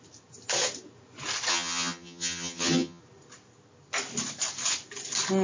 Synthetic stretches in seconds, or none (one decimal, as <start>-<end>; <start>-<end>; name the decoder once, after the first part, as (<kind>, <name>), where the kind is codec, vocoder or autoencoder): 1.5-3.0 (vocoder, HiFi-GAN)